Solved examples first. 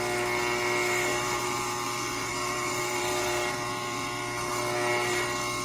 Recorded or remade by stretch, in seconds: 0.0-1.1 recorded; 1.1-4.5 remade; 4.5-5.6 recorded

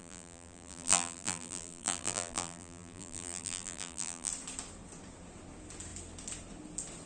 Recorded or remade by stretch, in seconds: 0.0-4.3 remade; 4.3-7.1 recorded

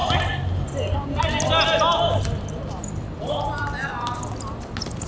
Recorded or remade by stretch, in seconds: 0.0-1.9 recorded; 1.9-4.3 remade; 4.3-5.1 recorded

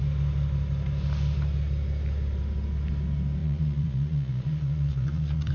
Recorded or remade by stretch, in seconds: 0.0-3.4 recorded; 3.4-5.5 remade

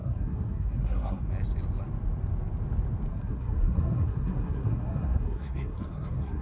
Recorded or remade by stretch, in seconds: 0.0-1.2 remade; 1.2-3.1 recorded; 3.1-6.4 remade

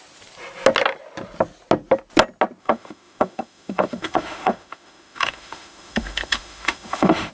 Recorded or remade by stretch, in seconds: 0.0-2.6 recorded; 2.6-7.3 remade

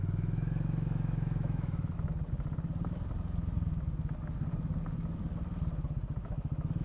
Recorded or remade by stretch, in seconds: 0.0-2.1 remade; 2.1-6.2 recorded; 6.2-6.8 remade